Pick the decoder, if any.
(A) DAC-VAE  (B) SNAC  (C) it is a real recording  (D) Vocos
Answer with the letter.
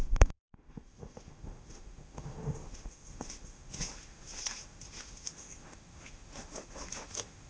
A